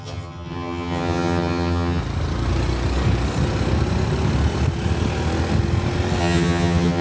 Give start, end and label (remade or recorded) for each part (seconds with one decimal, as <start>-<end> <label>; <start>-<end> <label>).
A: 0.0-2.0 remade; 2.0-6.2 recorded; 6.2-7.0 remade